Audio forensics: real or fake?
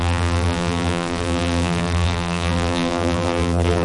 fake